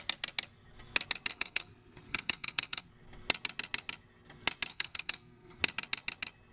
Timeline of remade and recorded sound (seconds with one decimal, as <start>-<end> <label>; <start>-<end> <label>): 0.0-1.3 recorded; 1.3-2.9 remade; 2.9-4.7 recorded; 4.7-5.6 remade; 5.6-6.5 recorded